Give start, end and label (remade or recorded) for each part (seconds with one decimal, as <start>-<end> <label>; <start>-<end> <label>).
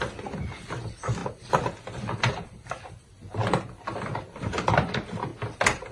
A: 0.0-3.4 remade; 3.4-4.0 recorded; 4.0-5.3 remade; 5.3-5.9 recorded